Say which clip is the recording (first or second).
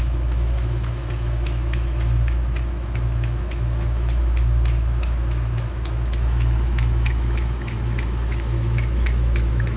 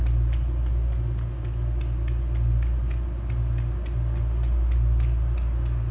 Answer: second